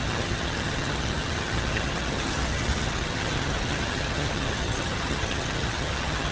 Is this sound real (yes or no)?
no